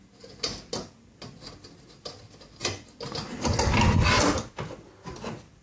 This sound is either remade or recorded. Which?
recorded